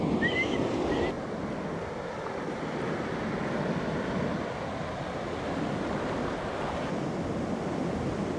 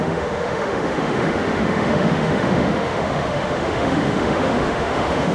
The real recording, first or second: first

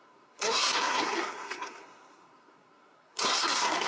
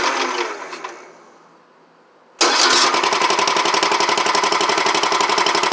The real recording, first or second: second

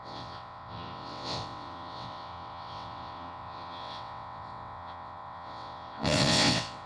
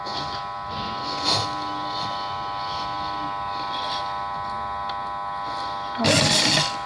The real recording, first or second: second